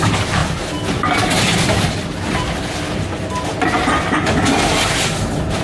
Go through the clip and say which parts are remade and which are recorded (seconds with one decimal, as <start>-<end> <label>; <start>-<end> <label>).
0.0-5.6 recorded